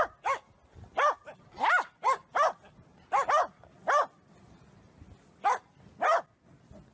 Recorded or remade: recorded